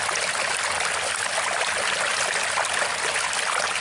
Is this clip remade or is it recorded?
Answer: recorded